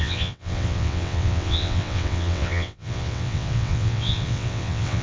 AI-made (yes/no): yes